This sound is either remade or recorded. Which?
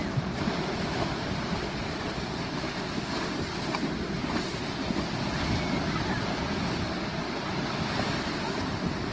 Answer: recorded